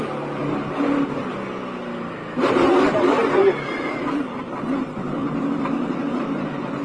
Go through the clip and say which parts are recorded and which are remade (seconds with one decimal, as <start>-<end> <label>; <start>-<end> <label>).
0.0-0.4 remade; 0.4-2.4 recorded; 2.4-6.8 remade